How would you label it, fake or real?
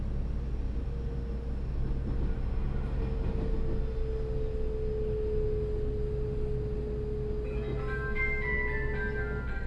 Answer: real